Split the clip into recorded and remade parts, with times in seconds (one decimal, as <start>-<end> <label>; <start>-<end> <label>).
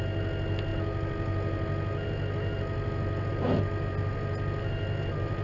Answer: 0.0-5.4 recorded